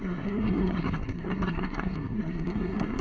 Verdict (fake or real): fake